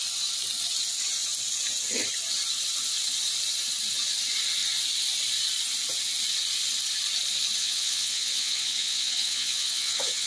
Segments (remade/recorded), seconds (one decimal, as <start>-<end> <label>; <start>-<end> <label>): 0.0-7.6 recorded; 7.6-10.3 remade